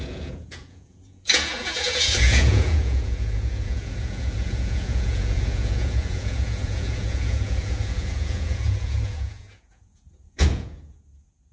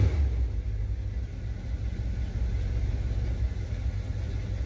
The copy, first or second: first